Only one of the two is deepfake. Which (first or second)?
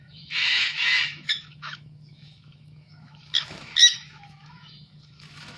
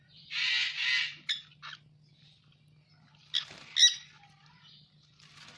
first